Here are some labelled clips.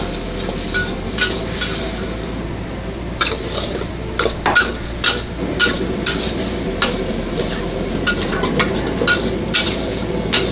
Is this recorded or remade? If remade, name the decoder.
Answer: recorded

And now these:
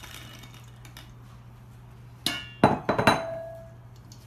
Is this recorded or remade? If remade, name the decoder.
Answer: recorded